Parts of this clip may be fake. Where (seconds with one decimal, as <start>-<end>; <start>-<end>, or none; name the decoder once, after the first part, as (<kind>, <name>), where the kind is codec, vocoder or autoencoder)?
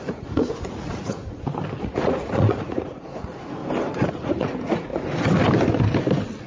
0.0-1.2 (vocoder, Vocos); 1.8-3.6; 4.1-4.9